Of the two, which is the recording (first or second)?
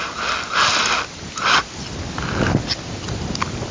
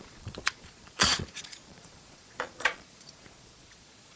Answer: first